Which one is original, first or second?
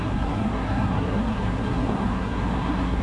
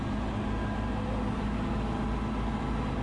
second